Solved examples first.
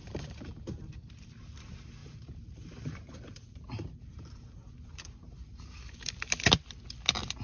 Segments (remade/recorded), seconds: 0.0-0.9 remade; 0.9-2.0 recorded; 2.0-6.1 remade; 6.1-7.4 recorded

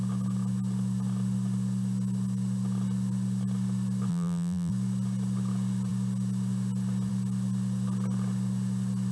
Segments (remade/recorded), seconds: 0.0-4.1 recorded; 4.1-4.7 remade; 4.7-9.1 recorded

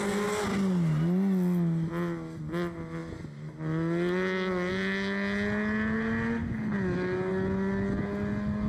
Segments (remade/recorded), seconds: 0.0-8.7 recorded